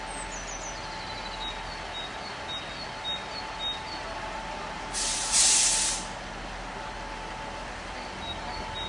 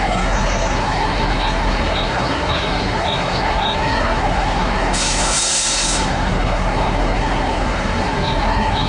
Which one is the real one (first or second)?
first